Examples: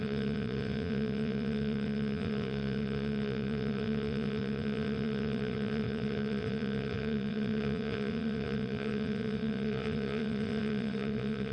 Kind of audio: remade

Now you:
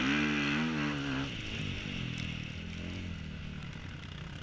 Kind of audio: recorded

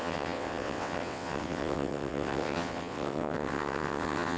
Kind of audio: remade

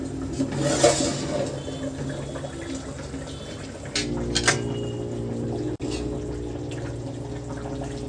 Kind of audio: recorded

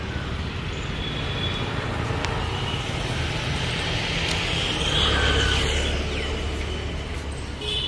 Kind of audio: recorded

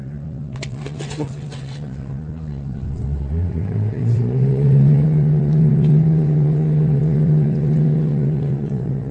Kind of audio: remade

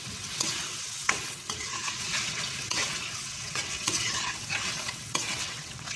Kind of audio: remade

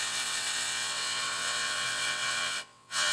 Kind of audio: remade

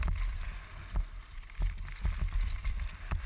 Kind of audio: recorded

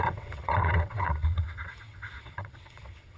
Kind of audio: remade